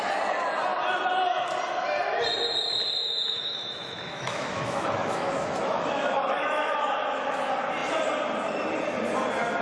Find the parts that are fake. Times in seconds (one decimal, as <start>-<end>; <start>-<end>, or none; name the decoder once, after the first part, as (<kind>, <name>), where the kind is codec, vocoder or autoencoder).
3.0-7.2 (autoencoder, DAC-VAE)